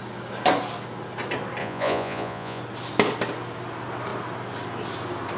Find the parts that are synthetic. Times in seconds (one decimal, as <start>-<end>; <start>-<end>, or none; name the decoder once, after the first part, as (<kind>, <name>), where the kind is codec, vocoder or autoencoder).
1.6-2.6 (vocoder, Vocos)